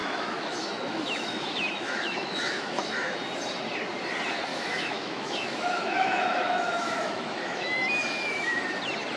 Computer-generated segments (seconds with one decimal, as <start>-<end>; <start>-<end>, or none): 0.0-3.2; 4.5-8.6